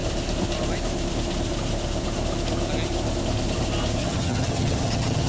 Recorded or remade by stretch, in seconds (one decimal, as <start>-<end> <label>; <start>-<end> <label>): 0.0-4.0 recorded; 4.0-5.3 remade